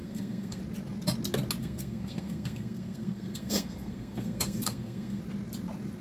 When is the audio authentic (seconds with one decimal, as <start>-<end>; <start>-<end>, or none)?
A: 0.6-1.6; 5.2-6.0